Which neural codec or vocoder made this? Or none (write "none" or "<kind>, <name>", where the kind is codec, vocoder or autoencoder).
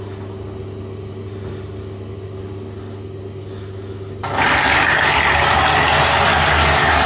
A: none